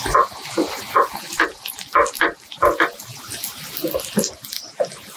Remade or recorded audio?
recorded